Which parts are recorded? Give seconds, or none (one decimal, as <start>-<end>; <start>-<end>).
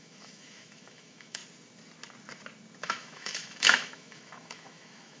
1.4-2.8